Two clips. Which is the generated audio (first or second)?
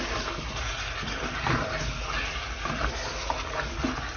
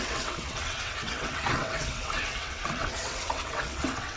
second